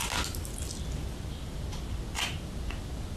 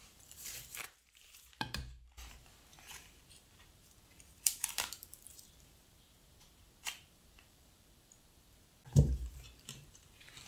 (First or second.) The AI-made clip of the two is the second